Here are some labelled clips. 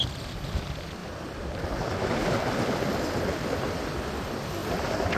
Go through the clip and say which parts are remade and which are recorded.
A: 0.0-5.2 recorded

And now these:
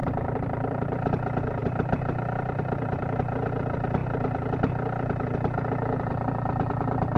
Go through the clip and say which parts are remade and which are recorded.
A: 0.0-1.1 remade; 1.1-1.6 recorded; 1.6-3.2 remade; 3.2-7.2 recorded

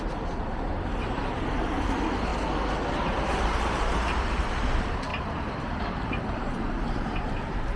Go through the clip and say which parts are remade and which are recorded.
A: 0.0-2.3 remade; 2.3-2.9 recorded; 2.9-7.8 remade